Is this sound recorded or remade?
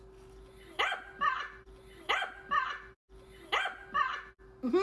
recorded